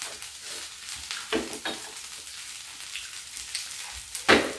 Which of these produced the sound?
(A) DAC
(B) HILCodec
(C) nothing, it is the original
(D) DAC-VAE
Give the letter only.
C